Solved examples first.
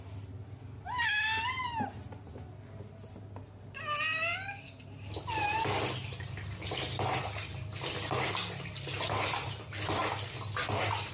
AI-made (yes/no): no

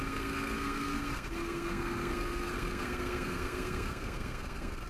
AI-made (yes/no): yes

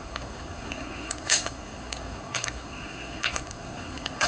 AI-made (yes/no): yes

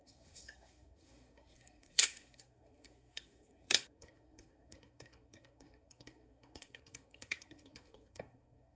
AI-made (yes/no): yes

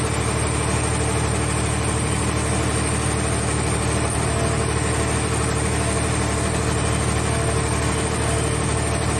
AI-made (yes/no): no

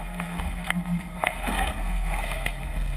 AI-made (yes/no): yes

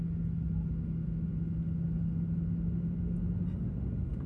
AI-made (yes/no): no